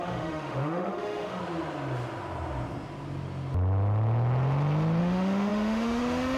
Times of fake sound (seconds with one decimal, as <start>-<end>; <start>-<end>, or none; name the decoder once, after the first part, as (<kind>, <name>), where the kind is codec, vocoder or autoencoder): 0.0-1.4 (autoencoder, DAC-VAE); 5.0-6.4